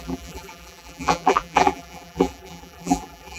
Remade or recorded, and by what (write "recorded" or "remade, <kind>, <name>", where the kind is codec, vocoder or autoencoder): remade, vocoder, BigVGAN v2